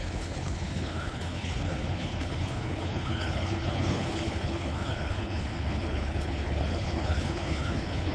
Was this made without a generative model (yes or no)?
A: no